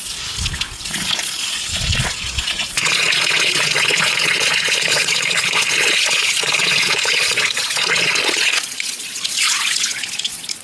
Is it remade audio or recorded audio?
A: remade